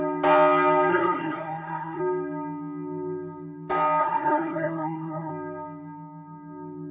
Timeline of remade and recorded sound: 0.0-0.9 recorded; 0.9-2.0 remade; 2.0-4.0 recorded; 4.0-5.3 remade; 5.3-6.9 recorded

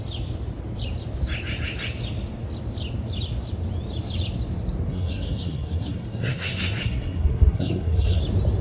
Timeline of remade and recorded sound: 0.0-4.9 recorded; 4.9-8.2 remade; 8.2-8.6 recorded